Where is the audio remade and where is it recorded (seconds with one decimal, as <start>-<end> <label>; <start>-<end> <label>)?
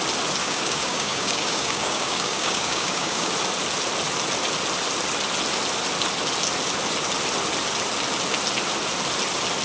0.0-0.4 recorded; 0.4-3.3 remade; 3.3-9.6 recorded